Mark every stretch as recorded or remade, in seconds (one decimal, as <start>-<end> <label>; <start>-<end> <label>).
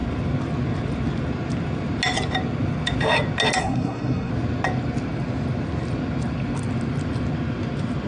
0.0-3.6 recorded; 3.6-4.3 remade; 4.3-8.1 recorded